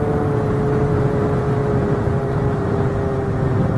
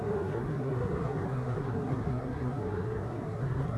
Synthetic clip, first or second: second